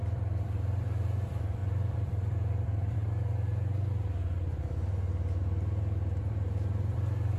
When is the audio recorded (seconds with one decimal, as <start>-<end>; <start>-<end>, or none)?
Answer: 3.0-6.2

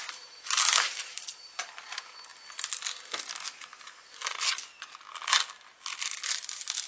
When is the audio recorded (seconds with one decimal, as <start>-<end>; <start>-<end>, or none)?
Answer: 2.3-6.3

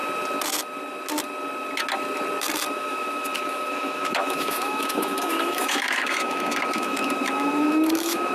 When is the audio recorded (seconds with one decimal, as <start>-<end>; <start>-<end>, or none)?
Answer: 0.0-2.7

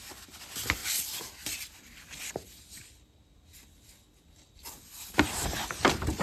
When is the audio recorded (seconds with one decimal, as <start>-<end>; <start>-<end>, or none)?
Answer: 0.0-6.2

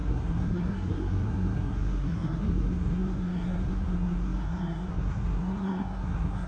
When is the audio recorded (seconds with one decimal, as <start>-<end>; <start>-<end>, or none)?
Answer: none